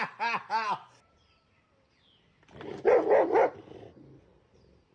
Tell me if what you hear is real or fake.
fake